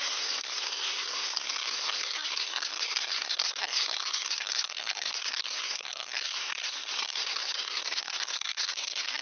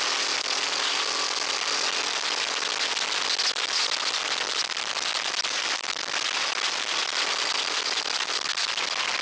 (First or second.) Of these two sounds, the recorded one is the second